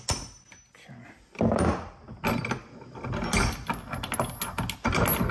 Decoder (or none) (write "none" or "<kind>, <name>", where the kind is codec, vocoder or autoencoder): none